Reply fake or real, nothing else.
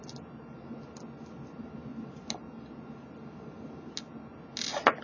real